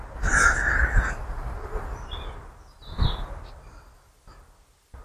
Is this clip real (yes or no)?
yes